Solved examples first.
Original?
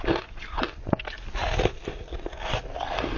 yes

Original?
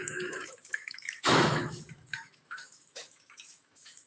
no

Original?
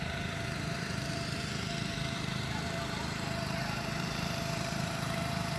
no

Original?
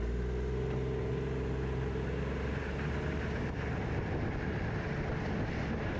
yes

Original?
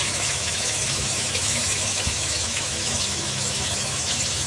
no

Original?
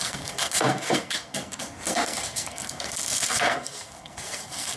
no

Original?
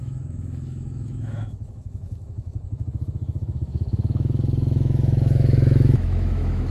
no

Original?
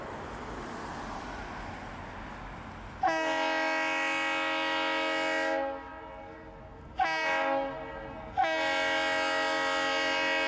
yes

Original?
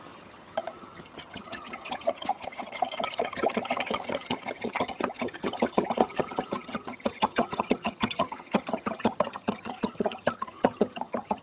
no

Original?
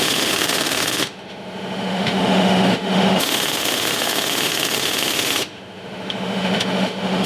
no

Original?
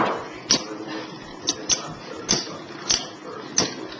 yes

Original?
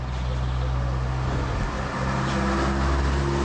yes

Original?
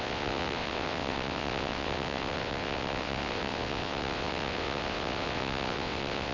no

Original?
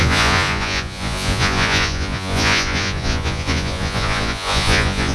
no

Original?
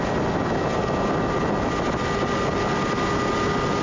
yes